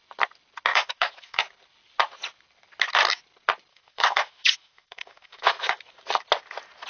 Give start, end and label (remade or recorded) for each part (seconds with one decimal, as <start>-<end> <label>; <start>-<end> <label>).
0.0-0.7 recorded; 0.7-1.4 remade; 1.4-3.7 recorded; 3.7-5.8 remade; 5.8-6.9 recorded